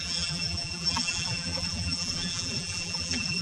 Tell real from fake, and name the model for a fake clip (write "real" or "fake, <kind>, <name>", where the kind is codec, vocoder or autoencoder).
fake, vocoder, BigVGAN v2